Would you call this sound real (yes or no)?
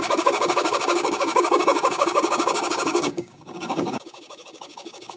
no